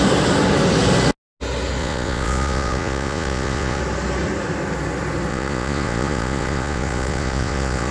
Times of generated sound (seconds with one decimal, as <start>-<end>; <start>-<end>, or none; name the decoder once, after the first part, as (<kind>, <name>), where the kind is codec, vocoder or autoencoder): 1.8-3.8 (vocoder, Vocos); 5.3-7.9